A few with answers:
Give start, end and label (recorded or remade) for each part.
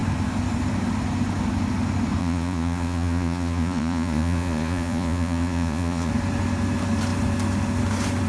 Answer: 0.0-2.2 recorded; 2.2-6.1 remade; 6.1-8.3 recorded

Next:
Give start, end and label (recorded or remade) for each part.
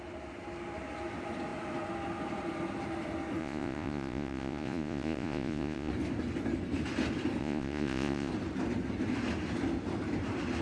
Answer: 0.0-3.4 recorded; 3.4-5.9 remade; 5.9-7.4 recorded; 7.4-8.3 remade; 8.3-10.6 recorded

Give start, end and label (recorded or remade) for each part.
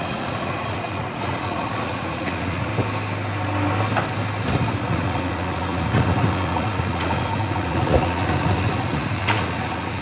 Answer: 0.0-2.7 remade; 2.7-4.5 recorded; 4.5-10.0 remade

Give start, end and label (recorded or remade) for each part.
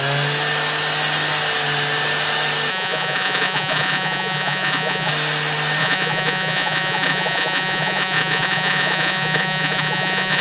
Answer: 0.0-2.7 recorded; 2.7-5.1 remade; 5.1-5.8 recorded; 5.8-10.4 remade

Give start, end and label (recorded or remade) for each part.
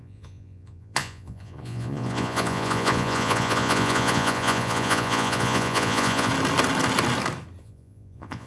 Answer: 0.0-6.3 remade; 6.3-7.6 recorded; 7.6-8.5 remade